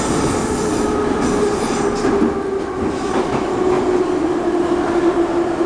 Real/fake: real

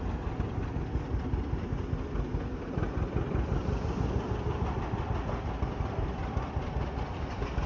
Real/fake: real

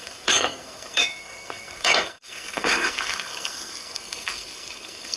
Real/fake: fake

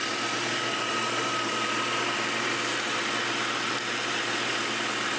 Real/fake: real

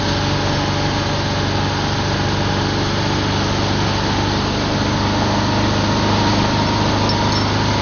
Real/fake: real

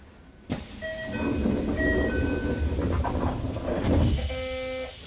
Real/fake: real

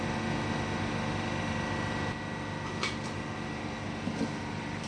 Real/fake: real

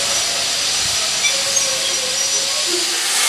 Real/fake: real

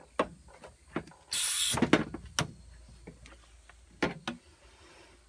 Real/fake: real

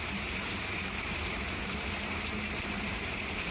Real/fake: fake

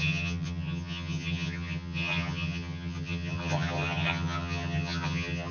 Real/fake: fake